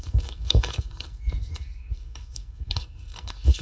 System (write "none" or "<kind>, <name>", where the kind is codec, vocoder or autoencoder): codec, SNAC